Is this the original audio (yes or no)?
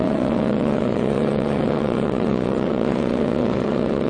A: no